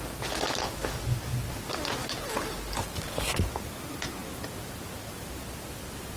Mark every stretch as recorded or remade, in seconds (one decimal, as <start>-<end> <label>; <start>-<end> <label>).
0.0-6.2 recorded

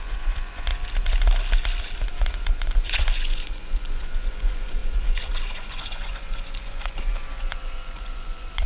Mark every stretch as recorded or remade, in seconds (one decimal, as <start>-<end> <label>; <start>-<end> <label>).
0.0-0.7 remade; 0.7-2.1 recorded; 2.1-8.7 remade